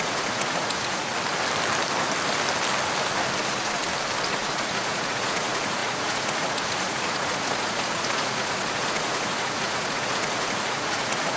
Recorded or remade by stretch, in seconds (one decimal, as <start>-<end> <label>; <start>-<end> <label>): 0.0-1.1 remade; 1.1-3.4 recorded; 3.4-3.8 remade; 3.8-4.3 recorded; 4.3-11.4 remade